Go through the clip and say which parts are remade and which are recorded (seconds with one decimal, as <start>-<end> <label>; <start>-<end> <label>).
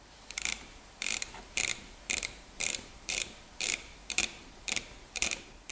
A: 0.0-5.7 remade